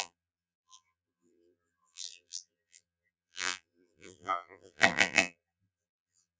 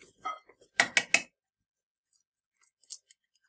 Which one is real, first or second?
second